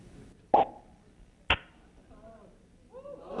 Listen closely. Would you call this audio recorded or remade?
recorded